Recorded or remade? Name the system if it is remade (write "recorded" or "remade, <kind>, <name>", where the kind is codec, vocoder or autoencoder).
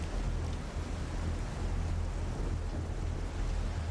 recorded